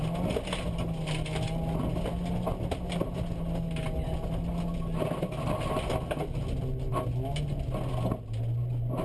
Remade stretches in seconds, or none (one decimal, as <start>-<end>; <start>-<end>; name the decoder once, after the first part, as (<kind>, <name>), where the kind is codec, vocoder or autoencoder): none

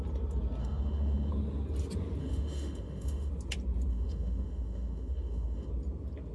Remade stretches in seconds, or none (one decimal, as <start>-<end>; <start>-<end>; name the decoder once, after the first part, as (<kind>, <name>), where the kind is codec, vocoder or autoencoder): 0.6-1.3 (autoencoder, DAC-VAE); 2.2-3.3; 3.9-5.7